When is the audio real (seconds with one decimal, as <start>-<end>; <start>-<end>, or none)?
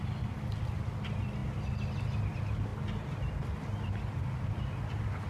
0.0-5.3